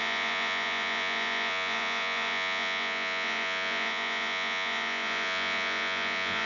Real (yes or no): no